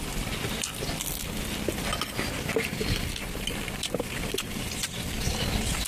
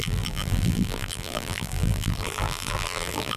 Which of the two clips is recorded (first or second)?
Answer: first